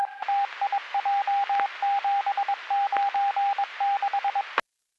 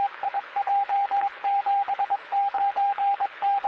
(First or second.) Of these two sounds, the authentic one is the first